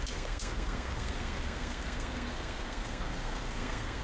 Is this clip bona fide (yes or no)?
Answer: no